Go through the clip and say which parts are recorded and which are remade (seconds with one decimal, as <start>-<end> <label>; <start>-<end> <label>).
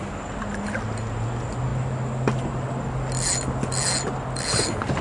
0.0-5.0 recorded